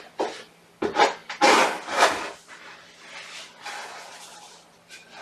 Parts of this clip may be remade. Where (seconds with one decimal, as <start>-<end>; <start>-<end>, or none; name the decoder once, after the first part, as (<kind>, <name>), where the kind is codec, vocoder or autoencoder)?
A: none